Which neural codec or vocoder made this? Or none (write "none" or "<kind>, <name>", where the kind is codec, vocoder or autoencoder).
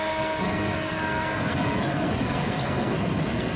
codec, SNAC